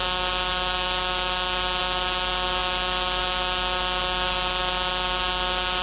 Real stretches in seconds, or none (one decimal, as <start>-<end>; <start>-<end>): 0.0-5.8